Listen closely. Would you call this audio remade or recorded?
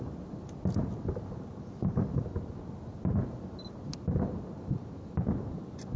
recorded